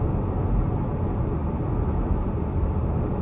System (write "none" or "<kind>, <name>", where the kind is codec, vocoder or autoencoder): none